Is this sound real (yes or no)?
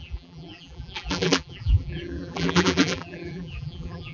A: no